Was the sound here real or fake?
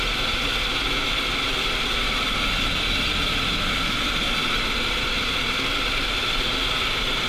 fake